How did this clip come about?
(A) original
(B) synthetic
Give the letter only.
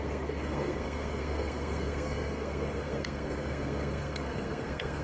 B